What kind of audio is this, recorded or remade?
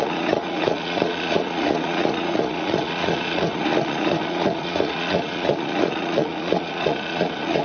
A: remade